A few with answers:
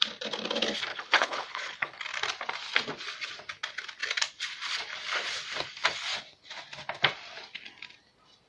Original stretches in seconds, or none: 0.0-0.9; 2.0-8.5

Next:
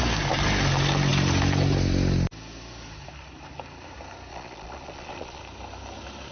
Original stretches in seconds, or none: 0.0-4.3; 5.4-6.3

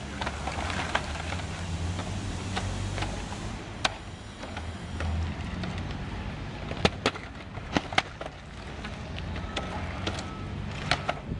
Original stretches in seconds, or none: 0.0-11.4

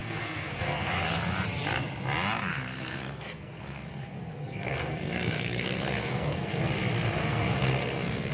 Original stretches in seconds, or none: 0.9-2.5; 6.6-7.2

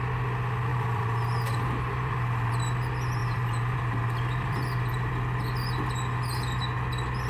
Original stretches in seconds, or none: 0.0-0.7; 2.5-3.2; 5.1-7.3

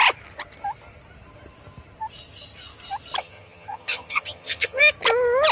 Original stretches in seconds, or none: 0.0-3.2; 4.8-5.5

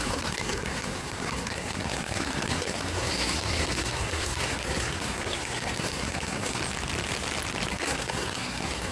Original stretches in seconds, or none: 6.6-7.7